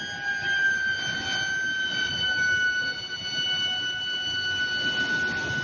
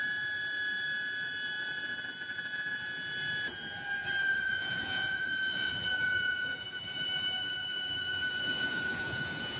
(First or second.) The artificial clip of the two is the second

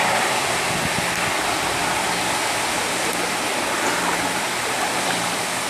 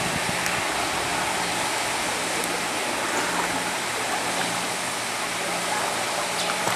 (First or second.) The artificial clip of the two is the first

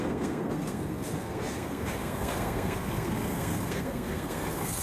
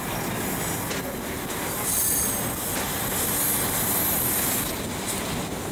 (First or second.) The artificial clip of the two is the first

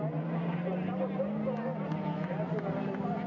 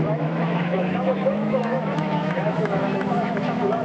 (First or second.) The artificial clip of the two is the second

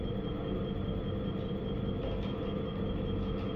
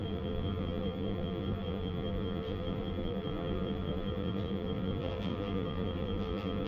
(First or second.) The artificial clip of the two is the second